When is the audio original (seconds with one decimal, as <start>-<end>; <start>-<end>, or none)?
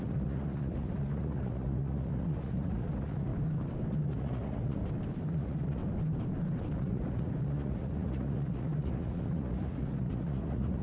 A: 3.3-3.9; 4.8-5.3; 5.8-6.8